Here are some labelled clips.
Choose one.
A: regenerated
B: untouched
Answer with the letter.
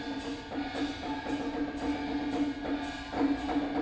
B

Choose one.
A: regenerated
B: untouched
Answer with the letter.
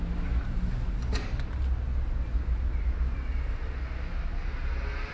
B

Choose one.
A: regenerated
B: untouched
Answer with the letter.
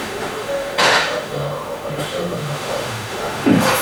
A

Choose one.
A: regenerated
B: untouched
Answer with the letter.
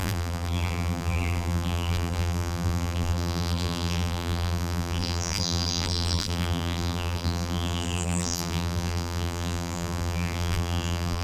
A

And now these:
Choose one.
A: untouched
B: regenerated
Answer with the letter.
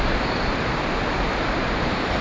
A